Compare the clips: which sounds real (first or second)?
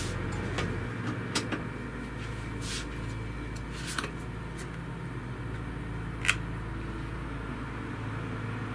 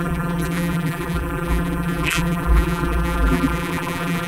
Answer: first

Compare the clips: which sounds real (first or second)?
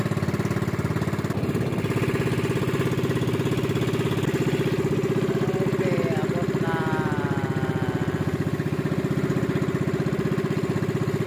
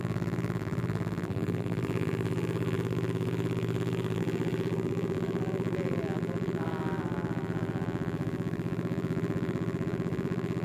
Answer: first